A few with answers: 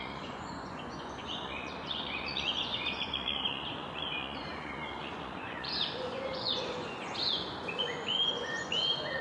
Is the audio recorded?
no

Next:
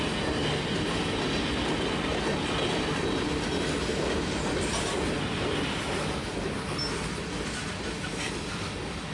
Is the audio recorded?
yes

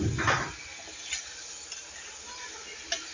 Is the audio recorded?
yes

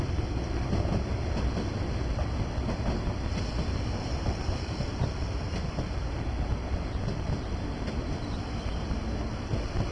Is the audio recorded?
yes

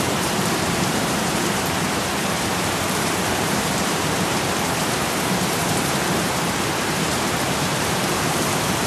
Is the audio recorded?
no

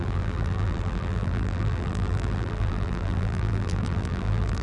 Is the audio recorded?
no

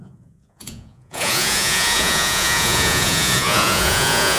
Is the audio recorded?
no